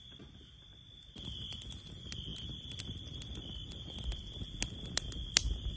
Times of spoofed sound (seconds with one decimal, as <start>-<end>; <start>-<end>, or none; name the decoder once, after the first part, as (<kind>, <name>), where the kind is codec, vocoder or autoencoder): none